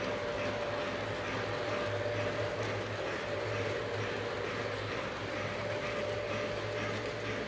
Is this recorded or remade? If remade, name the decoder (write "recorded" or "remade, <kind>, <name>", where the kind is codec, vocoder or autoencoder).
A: recorded